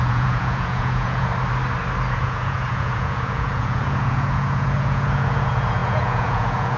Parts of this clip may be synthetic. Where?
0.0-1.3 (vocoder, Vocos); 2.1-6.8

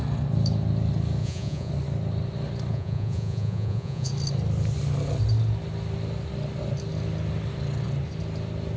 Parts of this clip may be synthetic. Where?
1.2-1.7 (vocoder, Vocos); 2.7-4.1

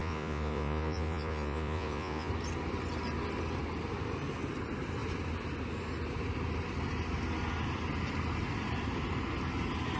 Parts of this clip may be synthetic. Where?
0.0-2.3 (vocoder, Vocos)

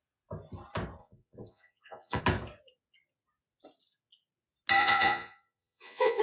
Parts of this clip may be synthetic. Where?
1.0-2.2 (vocoder, Vocos); 4.8-6.2

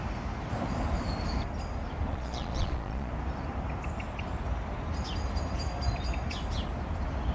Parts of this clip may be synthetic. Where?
2.1-3.1 (vocoder, Vocos)

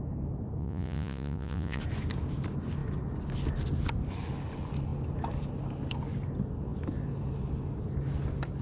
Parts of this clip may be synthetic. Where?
0.6-1.8 (vocoder, Vocos)

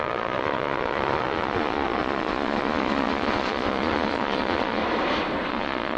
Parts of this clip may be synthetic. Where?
0.0-4.8 (vocoder, Vocos); 5.5-6.0